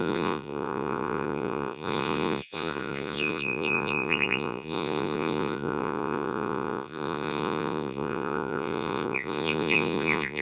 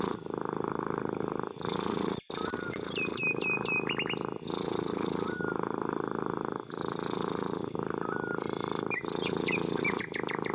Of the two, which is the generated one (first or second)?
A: first